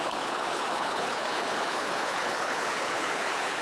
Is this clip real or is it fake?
fake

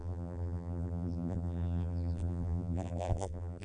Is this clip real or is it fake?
fake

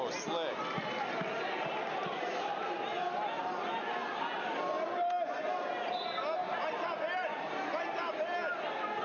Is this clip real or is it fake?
real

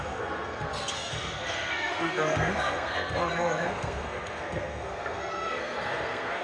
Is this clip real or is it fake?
fake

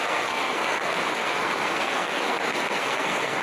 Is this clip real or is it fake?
fake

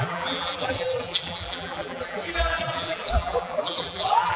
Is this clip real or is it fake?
fake